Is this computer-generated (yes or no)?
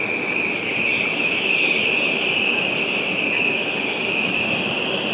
no